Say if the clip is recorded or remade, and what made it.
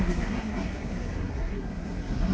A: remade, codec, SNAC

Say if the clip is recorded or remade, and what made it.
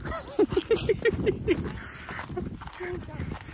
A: recorded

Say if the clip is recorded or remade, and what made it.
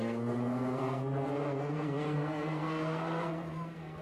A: remade, codec, SNAC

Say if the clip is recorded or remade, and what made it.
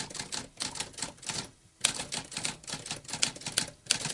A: recorded